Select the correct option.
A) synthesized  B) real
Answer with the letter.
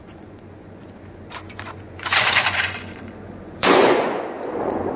A